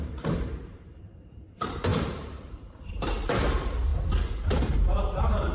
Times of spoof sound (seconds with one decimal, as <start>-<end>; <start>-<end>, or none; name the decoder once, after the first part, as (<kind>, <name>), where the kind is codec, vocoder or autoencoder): 0.0-3.9 (vocoder, BigVGAN v2); 4.5-5.5